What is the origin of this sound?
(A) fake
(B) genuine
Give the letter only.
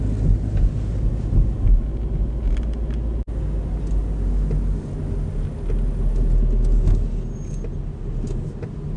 B